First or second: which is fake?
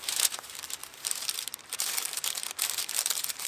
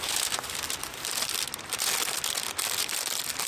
first